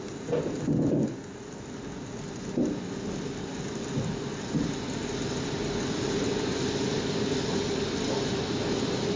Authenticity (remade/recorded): recorded